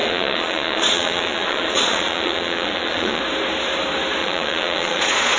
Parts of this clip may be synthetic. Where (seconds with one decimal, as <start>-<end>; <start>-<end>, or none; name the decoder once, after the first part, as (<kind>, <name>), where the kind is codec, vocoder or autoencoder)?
0.0-3.2 (vocoder, Vocos); 4.2-5.4